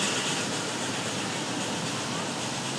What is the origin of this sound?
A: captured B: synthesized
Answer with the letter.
A